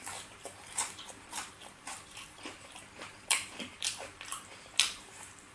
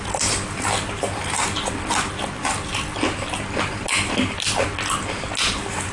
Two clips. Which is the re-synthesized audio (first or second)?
first